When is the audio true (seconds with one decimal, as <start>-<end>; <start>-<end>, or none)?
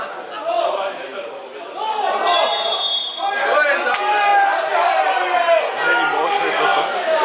0.0-7.2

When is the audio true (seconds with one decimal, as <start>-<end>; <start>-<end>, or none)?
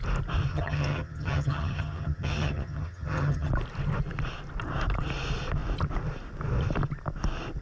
0.0-0.5; 3.5-7.6